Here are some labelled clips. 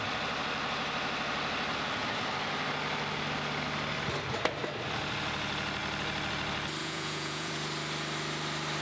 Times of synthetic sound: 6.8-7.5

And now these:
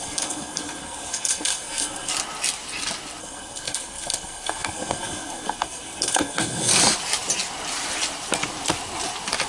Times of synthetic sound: 0.0-2.1; 3.2-6.7

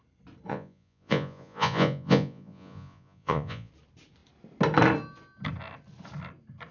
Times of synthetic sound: 0.5-3.7

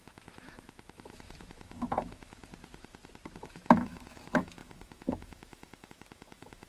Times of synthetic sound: 0.0-2.4; 3.4-6.7

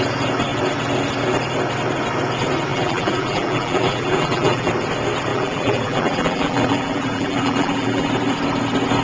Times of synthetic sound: 2.7-4.7; 5.3-8.1

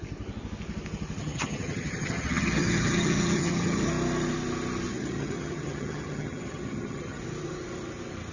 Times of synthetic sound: 1.2-3.9; 4.9-7.2